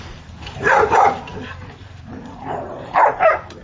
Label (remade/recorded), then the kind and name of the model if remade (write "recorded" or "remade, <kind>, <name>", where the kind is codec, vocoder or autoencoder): remade, vocoder, BigVGAN v2